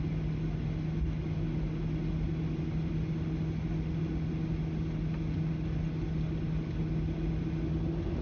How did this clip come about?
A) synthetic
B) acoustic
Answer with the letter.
B